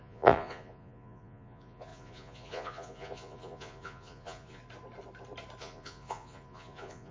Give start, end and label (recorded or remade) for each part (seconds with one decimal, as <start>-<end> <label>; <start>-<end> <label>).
0.0-4.6 remade; 4.6-5.6 recorded; 5.6-7.1 remade